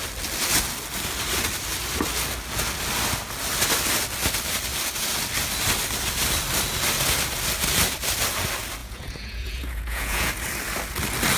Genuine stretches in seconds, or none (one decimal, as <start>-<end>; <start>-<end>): 0.0-8.8; 10.3-11.4